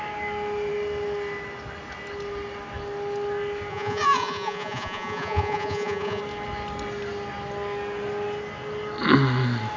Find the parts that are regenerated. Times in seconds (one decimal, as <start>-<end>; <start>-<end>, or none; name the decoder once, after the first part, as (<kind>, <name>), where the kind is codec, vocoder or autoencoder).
3.7-6.2 (vocoder, Vocos)